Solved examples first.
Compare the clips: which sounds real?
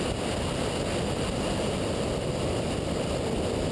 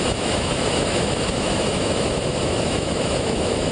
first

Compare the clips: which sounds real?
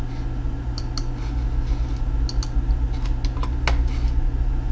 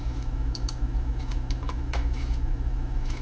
first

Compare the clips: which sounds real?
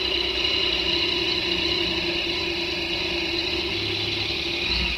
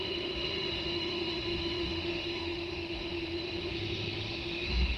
first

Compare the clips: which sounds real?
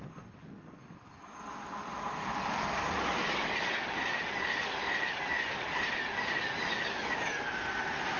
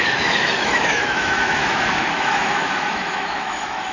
first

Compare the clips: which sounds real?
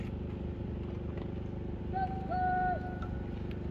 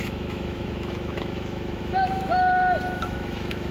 first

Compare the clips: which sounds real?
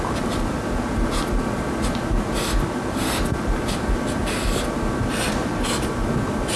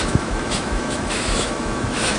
first